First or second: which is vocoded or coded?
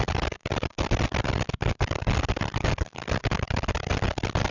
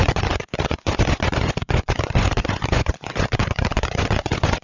second